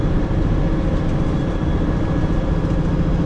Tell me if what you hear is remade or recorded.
recorded